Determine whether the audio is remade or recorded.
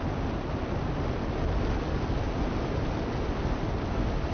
recorded